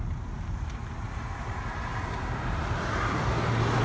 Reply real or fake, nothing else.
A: real